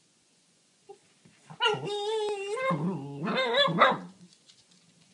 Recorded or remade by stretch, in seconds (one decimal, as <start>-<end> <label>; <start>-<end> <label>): 0.0-1.0 remade; 1.0-4.1 recorded; 4.1-5.1 remade